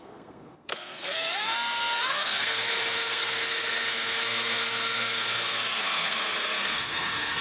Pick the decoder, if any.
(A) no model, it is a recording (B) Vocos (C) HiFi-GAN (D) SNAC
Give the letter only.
D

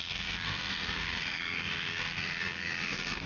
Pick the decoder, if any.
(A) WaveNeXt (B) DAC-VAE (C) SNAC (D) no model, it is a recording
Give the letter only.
C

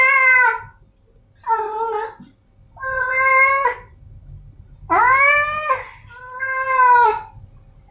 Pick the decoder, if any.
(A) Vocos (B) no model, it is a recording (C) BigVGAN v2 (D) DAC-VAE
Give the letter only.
B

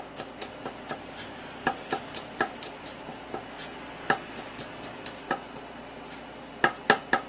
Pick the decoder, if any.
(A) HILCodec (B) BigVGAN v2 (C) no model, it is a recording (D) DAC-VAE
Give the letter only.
C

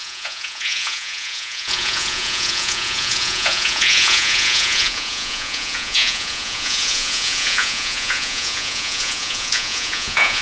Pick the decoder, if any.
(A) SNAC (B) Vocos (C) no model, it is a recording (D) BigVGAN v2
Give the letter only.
B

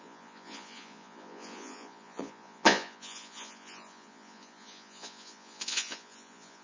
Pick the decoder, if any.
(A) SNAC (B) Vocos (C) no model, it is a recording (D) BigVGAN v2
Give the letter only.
B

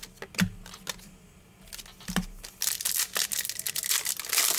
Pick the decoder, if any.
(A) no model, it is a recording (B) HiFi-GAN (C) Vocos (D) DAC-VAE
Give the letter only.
A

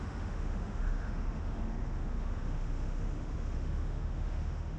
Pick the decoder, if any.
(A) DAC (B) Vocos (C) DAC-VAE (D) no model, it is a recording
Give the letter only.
C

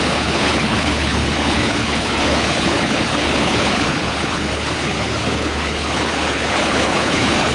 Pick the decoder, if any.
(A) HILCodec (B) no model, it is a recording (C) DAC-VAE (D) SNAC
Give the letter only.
A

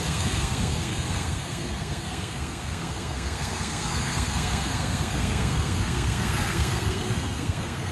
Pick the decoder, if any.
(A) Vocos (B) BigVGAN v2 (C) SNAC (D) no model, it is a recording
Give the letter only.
C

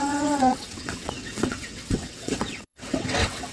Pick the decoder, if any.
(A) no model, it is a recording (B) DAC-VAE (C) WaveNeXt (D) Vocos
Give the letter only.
C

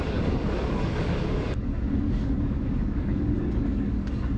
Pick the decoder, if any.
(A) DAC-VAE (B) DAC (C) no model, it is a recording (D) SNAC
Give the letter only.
B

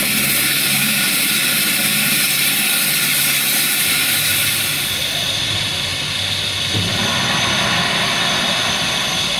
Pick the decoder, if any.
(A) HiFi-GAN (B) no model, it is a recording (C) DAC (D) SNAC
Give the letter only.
B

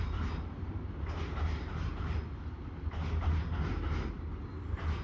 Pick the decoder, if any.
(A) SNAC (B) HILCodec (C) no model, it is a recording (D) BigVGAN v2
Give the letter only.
C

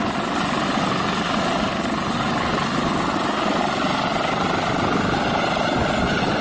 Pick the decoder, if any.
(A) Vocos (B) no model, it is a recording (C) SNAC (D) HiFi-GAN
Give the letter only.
B